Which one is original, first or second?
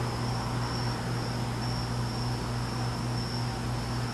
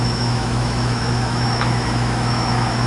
first